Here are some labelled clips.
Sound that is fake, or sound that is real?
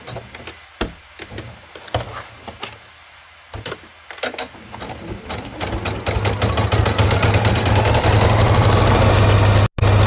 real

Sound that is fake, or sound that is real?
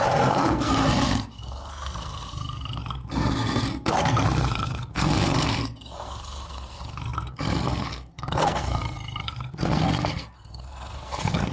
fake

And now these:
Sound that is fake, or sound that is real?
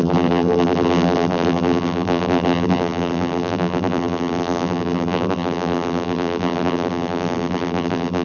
fake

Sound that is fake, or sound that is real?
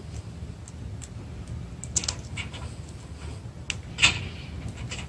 real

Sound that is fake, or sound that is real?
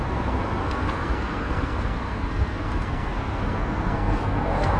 fake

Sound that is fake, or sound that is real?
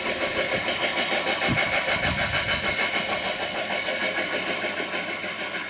real